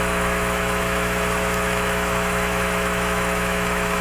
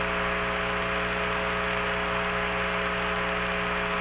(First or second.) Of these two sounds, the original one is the second